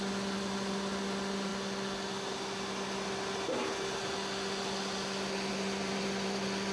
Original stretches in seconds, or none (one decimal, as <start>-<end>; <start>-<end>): 1.5-5.5